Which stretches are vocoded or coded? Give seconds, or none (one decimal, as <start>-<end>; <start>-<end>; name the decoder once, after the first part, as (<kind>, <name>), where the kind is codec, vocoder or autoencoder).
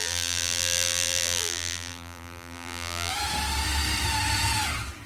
0.0-3.1 (vocoder, BigVGAN v2)